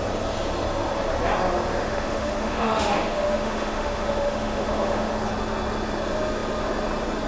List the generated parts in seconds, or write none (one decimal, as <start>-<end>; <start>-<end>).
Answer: 1.8-5.1